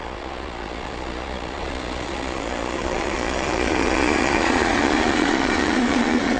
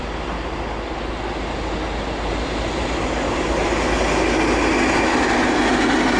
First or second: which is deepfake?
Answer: first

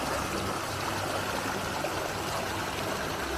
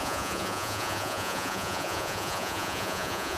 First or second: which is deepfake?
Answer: second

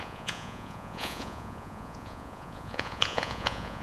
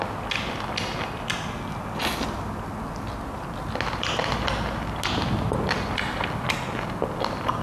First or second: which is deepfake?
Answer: first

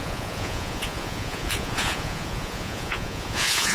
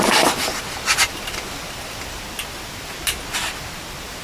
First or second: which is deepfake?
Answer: first